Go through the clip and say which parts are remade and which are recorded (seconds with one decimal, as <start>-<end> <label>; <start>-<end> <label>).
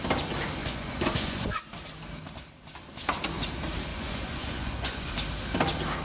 0.0-0.6 recorded; 0.6-1.6 remade; 1.6-3.9 recorded; 3.9-5.1 remade; 5.1-6.0 recorded